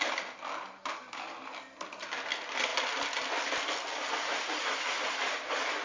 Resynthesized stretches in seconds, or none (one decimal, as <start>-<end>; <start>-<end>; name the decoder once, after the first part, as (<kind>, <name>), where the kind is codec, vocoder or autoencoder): none